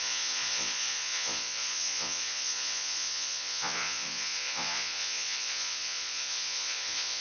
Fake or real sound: fake